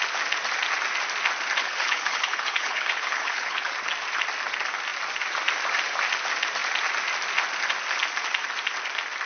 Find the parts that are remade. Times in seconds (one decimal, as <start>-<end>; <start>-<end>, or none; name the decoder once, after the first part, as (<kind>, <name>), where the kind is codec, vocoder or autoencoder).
1.6-3.7 (codec, HILCodec)